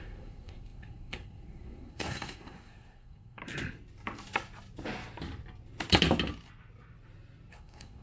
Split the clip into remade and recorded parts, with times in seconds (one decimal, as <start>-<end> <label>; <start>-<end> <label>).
0.0-3.4 remade; 3.4-7.5 recorded; 7.5-8.0 remade

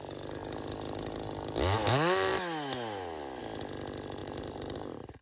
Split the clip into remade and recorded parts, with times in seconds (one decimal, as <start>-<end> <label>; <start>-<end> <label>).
0.0-4.2 recorded; 4.2-5.2 remade

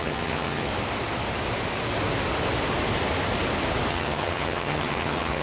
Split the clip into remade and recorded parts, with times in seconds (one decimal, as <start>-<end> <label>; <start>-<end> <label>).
0.0-0.7 remade; 0.7-3.9 recorded; 3.9-5.4 remade

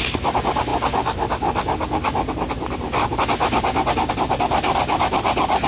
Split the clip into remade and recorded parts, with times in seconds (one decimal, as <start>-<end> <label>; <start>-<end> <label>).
0.0-5.7 recorded

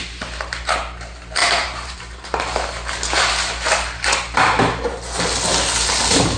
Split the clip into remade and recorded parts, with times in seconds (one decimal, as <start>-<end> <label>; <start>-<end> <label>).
0.0-1.4 recorded; 1.4-2.4 remade; 2.4-6.4 recorded

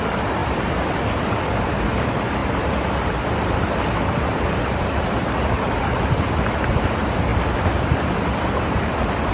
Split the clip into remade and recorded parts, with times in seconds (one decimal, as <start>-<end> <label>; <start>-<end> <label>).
0.0-9.3 recorded

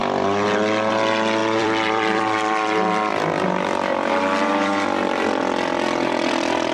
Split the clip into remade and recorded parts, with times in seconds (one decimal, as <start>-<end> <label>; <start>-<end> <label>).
0.0-1.4 recorded; 1.4-5.4 remade; 5.4-6.7 recorded